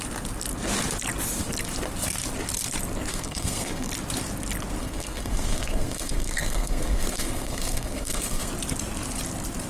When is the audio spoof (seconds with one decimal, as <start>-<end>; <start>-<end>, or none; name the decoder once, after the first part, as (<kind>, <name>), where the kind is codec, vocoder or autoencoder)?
3.1-3.9 (codec, SNAC); 4.8-8.5